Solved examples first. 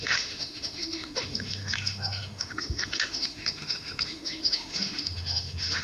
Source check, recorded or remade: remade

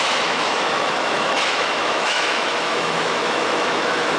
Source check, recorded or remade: remade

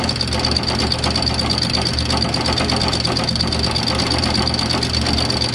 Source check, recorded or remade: recorded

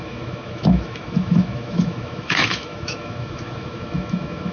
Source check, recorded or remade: remade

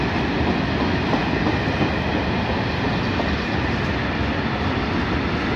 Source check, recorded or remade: recorded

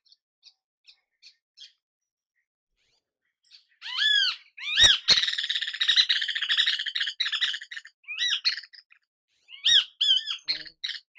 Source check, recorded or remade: recorded